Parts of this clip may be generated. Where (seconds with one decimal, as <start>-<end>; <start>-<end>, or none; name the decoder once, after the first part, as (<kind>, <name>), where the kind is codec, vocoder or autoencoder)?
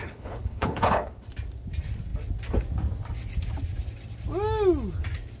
0.0-1.3 (codec, HILCodec)